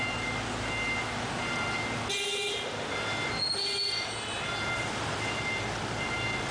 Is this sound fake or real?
real